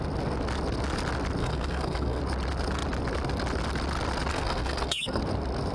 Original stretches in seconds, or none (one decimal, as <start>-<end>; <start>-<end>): 0.0-1.4; 2.2-4.3; 5.2-5.7